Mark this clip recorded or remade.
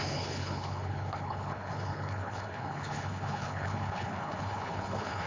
remade